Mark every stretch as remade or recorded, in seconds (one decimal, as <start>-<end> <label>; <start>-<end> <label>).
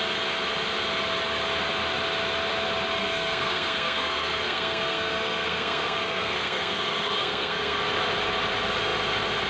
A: 0.0-3.0 recorded; 3.0-7.8 remade; 7.8-9.5 recorded